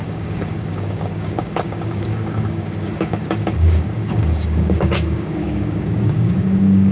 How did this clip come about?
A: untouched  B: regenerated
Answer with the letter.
B